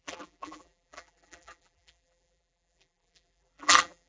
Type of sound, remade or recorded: remade